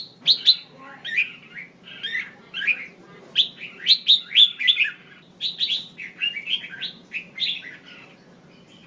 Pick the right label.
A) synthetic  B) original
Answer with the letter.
B